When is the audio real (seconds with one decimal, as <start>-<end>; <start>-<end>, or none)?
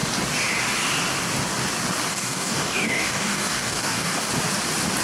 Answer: 0.0-2.1; 4.3-5.0